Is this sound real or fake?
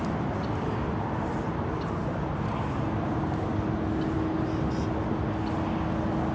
real